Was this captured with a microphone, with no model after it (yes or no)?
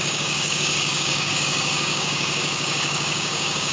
no